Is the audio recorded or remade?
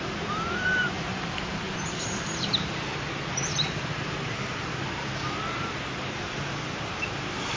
remade